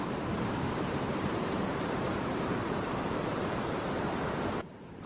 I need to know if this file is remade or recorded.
remade